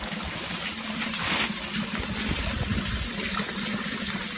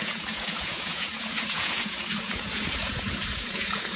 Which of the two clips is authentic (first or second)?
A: first